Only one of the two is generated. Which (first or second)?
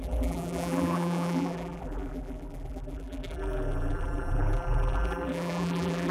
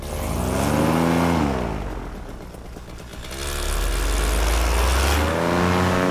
first